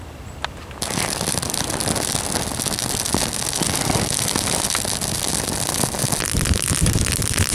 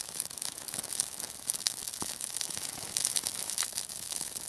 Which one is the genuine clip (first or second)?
first